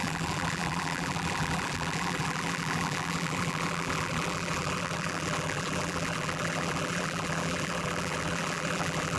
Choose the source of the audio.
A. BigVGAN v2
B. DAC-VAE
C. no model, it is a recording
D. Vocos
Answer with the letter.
A